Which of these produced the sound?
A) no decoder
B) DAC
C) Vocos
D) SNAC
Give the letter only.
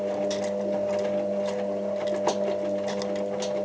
A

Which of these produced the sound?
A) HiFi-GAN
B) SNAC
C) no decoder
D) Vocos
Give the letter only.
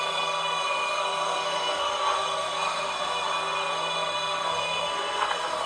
B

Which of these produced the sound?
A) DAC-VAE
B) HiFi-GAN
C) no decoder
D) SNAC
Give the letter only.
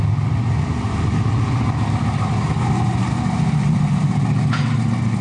C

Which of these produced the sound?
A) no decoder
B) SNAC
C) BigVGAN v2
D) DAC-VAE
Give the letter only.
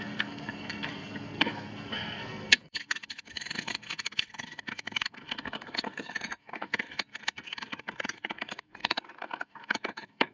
B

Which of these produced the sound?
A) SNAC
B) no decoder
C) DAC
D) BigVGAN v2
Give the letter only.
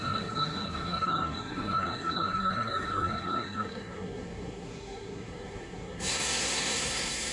A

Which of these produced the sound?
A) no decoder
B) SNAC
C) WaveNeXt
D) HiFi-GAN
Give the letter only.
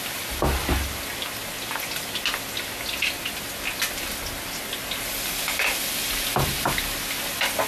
A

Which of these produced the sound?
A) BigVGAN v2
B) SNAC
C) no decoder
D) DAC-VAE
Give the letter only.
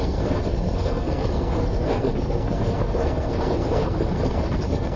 B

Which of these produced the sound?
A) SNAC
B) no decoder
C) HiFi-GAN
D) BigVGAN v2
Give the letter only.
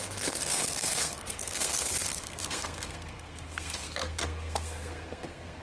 A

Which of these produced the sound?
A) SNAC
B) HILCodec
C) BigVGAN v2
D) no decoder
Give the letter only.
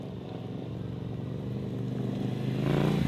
D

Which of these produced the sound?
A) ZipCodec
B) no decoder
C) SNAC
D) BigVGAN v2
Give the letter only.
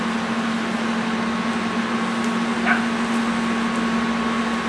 B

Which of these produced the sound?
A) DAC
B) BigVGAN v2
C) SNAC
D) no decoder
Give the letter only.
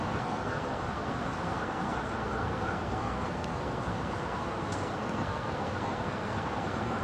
C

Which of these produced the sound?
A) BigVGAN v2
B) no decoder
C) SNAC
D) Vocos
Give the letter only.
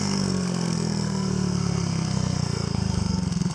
C